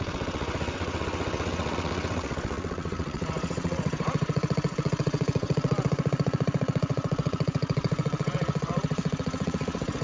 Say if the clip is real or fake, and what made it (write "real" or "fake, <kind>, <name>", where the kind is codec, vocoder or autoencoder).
fake, vocoder, WaveNeXt